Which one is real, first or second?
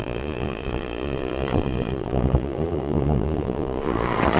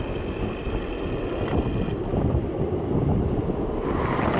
second